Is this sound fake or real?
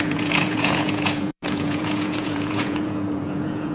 fake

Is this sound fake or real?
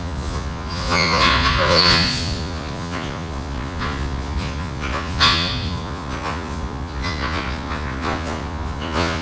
fake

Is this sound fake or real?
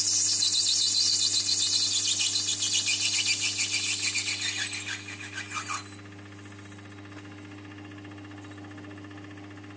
real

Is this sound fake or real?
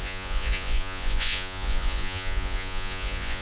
fake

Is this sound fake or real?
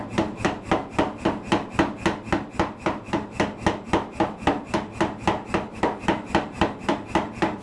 real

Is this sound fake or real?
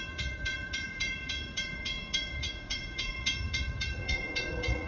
fake